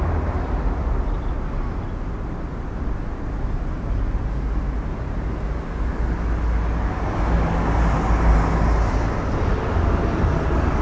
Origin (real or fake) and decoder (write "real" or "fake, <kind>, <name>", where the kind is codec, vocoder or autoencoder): real